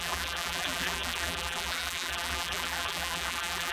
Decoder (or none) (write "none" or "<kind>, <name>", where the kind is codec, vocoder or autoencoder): vocoder, BigVGAN v2